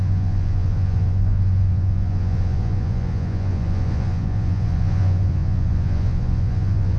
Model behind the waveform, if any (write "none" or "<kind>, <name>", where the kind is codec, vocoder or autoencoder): vocoder, Vocos